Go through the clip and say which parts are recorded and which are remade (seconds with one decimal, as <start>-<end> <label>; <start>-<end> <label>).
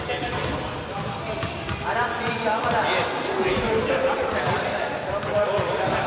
0.0-3.8 recorded; 3.8-6.1 remade